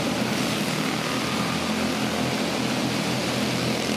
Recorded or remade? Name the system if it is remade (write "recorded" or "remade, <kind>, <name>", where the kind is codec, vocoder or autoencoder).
recorded